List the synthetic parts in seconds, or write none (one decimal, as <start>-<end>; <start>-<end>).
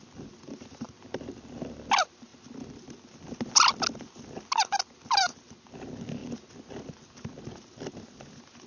none